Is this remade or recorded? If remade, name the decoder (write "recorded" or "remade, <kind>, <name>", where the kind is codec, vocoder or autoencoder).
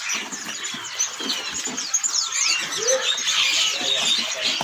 recorded